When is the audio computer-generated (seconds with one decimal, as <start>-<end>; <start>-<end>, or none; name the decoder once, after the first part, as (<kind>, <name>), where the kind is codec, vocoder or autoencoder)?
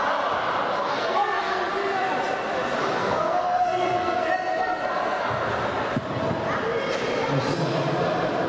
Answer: 0.8-1.7 (codec, SNAC); 3.0-4.3